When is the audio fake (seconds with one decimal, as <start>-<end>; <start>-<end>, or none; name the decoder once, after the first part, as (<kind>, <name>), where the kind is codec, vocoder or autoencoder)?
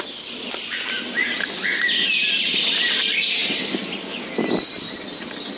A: none